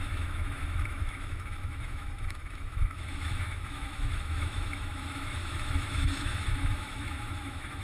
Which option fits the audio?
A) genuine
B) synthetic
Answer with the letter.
B